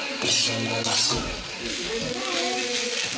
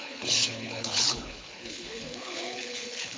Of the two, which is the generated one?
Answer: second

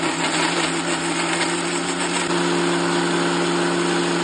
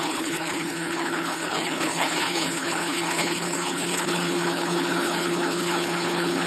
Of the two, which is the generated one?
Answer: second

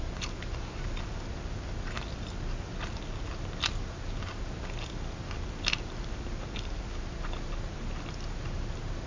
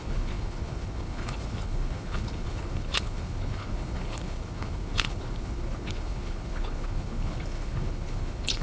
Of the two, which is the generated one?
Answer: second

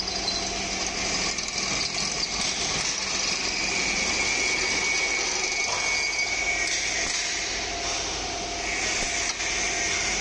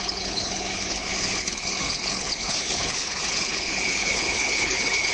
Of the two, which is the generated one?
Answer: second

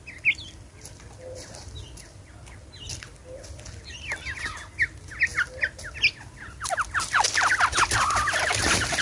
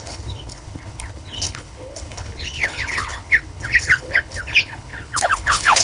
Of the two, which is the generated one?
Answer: second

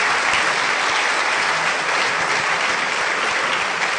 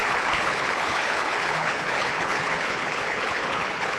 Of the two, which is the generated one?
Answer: second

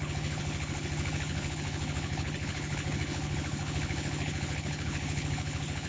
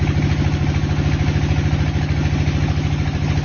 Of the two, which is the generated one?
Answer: first